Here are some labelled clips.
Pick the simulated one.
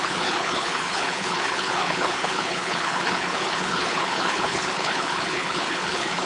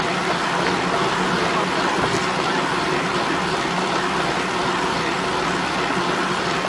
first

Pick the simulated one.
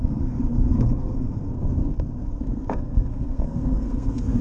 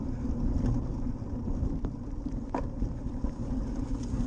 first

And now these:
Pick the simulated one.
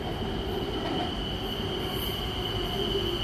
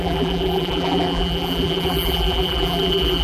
second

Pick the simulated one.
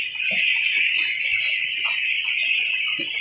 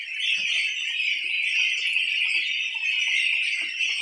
first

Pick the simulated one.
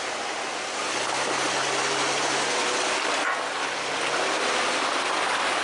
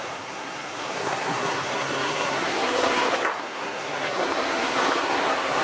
second